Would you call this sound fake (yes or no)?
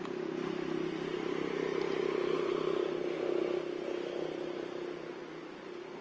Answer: no